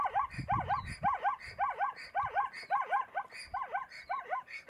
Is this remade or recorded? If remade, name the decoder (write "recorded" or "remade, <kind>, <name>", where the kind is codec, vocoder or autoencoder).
recorded